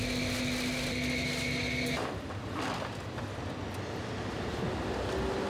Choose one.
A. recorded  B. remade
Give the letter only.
A